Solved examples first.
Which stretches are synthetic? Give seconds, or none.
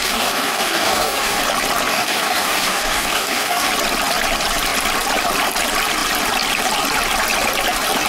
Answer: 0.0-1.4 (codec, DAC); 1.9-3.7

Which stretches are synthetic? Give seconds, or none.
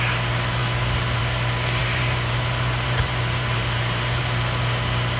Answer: 1.8-4.2 (vocoder, BigVGAN v2)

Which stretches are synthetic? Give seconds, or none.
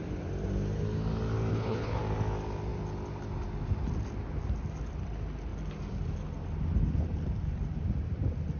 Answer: 1.5-2.0 (codec, HILCodec)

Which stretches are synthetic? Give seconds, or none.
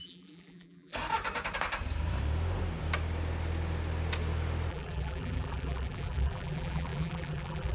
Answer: 0.0-0.9 (vocoder, BigVGAN v2); 4.7-7.7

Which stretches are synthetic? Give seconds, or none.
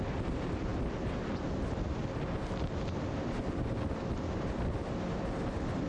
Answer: none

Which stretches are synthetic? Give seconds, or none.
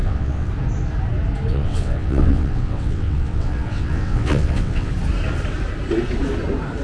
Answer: 0.0-0.5 (vocoder, WaveNeXt); 1.5-4.9